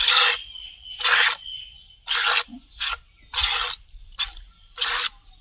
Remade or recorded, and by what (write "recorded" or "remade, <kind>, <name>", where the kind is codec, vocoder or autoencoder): recorded